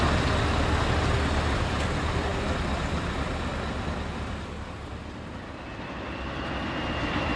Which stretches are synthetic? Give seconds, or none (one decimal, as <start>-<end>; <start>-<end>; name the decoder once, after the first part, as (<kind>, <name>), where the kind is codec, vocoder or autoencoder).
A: none